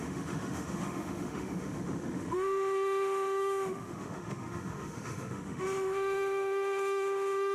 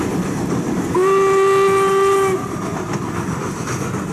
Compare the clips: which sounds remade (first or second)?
first